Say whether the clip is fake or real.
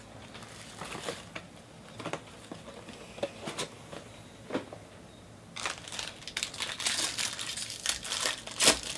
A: real